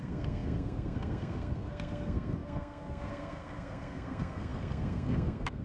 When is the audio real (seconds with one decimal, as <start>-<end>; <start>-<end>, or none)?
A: none